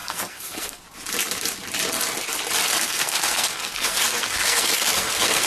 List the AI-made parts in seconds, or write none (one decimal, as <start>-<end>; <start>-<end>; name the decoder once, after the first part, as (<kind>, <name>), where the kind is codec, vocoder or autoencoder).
0.0-0.8 (codec, SNAC); 2.7-5.5